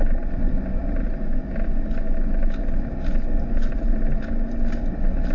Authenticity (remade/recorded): recorded